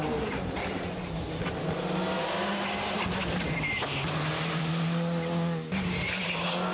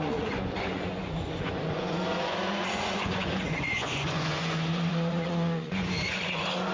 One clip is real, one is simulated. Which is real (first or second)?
first